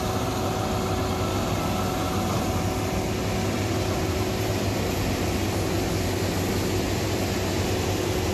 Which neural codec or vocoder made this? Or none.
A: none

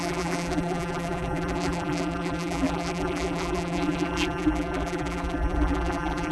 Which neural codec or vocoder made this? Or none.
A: vocoder, BigVGAN v2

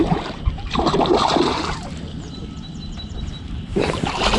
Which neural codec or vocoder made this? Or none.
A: vocoder, BigVGAN v2